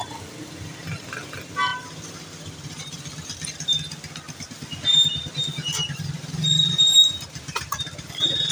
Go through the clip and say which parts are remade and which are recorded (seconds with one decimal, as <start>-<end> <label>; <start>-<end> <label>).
0.0-8.5 recorded